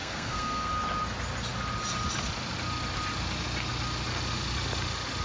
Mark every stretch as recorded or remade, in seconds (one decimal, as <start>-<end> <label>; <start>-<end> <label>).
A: 0.0-0.7 remade; 0.7-5.2 recorded